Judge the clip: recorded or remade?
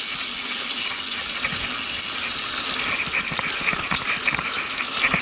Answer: recorded